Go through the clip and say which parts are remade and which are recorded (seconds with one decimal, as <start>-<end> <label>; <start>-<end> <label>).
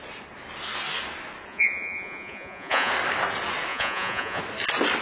0.0-1.5 recorded; 1.5-2.9 remade; 2.9-3.7 recorded; 3.7-4.4 remade; 4.4-5.0 recorded